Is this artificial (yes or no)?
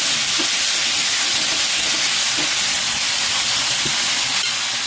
no